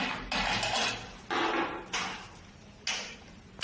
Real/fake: real